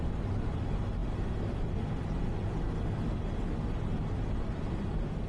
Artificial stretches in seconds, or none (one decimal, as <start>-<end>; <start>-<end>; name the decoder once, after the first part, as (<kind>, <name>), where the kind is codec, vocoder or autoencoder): none